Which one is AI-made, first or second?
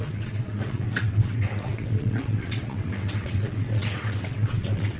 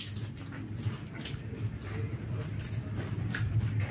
first